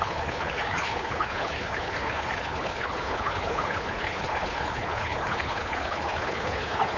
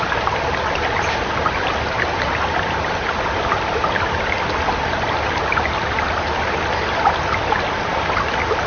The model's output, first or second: first